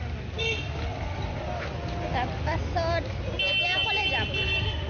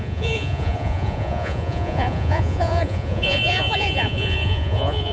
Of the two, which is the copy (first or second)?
second